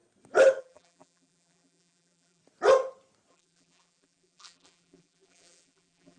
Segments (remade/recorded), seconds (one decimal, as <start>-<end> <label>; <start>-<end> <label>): 0.0-0.6 recorded; 0.6-2.4 remade; 2.4-3.3 recorded; 3.3-6.2 remade